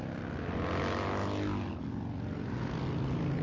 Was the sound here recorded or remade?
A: recorded